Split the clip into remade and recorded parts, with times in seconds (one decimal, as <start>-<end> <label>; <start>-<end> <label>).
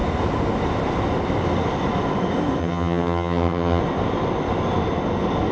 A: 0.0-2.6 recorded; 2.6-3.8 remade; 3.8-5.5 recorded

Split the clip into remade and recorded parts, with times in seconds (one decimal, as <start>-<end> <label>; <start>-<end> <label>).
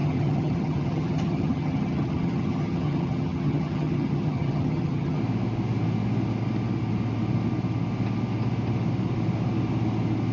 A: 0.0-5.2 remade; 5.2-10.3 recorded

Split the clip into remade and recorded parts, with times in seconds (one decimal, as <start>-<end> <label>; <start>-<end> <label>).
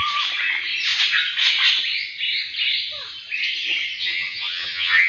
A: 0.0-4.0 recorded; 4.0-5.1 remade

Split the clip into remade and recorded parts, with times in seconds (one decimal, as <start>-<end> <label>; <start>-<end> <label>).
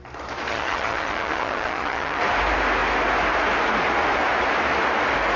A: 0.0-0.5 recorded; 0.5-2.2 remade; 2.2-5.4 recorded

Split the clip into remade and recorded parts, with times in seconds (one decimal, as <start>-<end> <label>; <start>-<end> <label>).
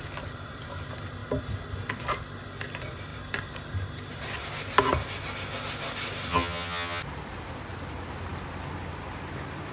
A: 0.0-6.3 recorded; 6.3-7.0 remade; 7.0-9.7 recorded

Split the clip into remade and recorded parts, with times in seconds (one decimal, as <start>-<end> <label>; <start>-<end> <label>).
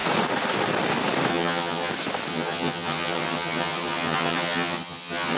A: 0.0-1.3 recorded; 1.3-1.9 remade; 1.9-2.3 recorded; 2.3-5.4 remade